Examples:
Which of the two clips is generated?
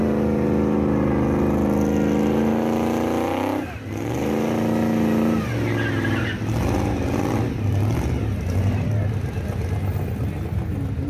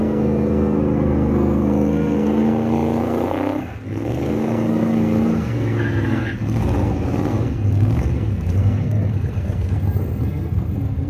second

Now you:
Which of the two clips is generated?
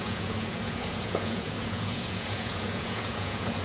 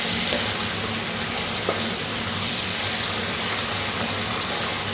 first